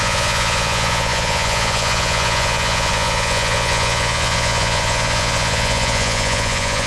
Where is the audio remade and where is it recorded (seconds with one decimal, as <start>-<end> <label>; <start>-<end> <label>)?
0.0-6.9 remade